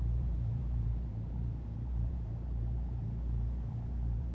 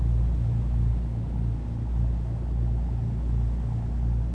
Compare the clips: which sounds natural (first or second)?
second